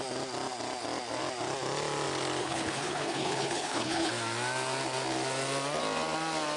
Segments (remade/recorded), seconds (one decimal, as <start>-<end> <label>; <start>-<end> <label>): 0.0-2.4 recorded; 2.4-4.1 remade; 4.1-6.6 recorded